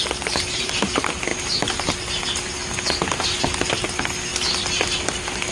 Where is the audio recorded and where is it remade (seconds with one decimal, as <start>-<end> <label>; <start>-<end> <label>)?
0.0-1.3 recorded; 1.3-1.9 remade; 1.9-4.3 recorded; 4.3-5.5 remade